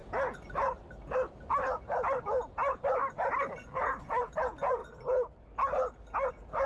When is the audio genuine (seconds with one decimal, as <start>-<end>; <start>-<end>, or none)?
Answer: 0.0-4.0; 4.8-6.3